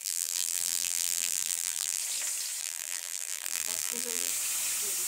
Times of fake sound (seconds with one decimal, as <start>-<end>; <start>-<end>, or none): 0.0-2.0; 2.6-4.3